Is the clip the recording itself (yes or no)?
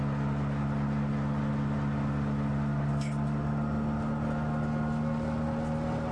yes